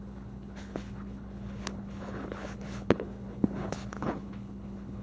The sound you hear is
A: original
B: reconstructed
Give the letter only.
B